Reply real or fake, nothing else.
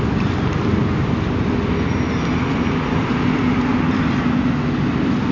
real